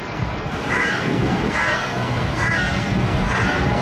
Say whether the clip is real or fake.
fake